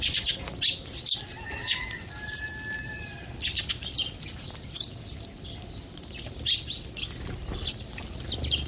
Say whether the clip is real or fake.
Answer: real